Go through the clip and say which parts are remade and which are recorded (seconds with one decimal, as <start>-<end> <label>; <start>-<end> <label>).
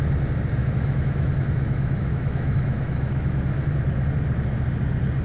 0.0-0.6 recorded; 0.6-3.7 remade; 3.7-5.2 recorded